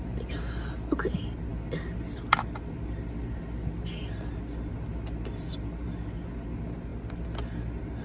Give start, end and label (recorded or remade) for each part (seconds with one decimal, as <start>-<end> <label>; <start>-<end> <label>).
0.0-8.0 recorded